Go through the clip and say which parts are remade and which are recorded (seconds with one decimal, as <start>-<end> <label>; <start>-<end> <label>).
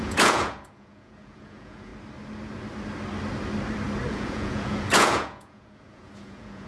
0.0-1.9 remade; 1.9-4.1 recorded; 4.1-6.7 remade